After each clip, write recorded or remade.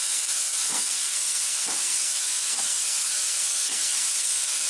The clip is remade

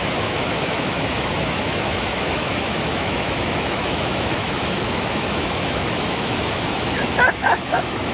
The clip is remade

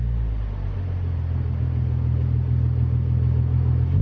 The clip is recorded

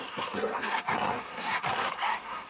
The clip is remade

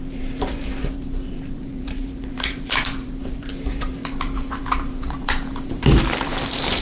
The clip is remade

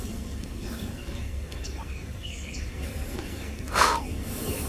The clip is remade